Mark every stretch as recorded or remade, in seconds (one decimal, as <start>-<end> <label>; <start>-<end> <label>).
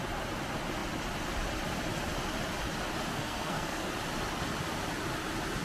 0.0-3.1 recorded; 3.1-3.9 remade; 3.9-5.6 recorded